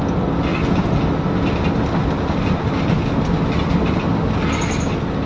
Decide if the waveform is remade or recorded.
recorded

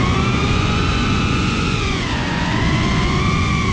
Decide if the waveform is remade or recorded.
remade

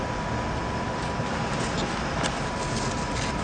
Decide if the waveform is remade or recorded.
recorded